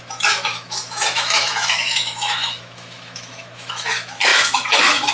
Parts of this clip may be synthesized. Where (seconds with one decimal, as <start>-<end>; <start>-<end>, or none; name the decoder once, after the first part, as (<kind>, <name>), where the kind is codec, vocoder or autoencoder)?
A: 0.0-5.1 (autoencoder, DAC-VAE)